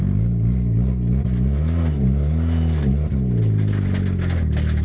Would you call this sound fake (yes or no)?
no